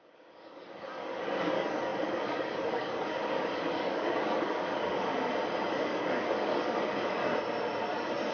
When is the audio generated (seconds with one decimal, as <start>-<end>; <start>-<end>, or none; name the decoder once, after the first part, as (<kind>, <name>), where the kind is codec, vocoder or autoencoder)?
0.0-5.1 (codec, DAC); 5.7-7.2

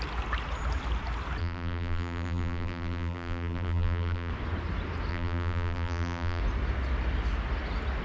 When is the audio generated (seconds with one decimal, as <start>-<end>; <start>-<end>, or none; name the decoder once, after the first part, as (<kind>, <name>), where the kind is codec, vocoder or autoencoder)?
1.4-4.3 (vocoder, BigVGAN v2); 5.1-6.4

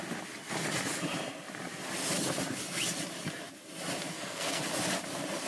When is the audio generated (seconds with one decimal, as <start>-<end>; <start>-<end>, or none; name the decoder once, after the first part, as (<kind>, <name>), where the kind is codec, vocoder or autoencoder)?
4.1-4.6 (codec, SNAC)